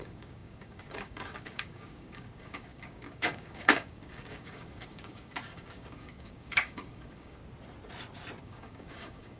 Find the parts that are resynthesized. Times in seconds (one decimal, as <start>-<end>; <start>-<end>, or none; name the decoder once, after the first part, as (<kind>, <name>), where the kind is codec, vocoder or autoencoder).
0.0-7.4 (codec, DAC); 8.4-9.4